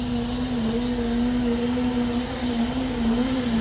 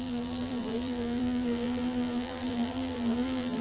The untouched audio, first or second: first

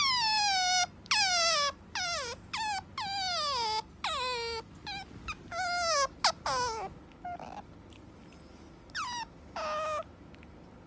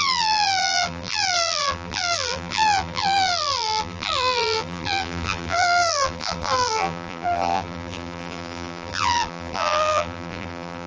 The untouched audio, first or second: first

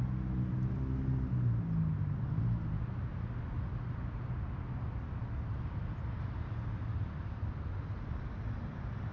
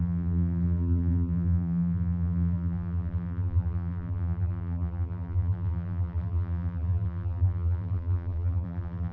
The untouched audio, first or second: first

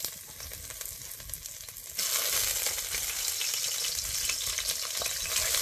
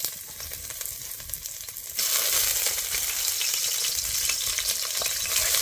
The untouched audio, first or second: first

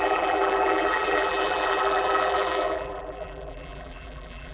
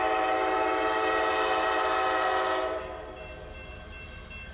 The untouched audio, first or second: second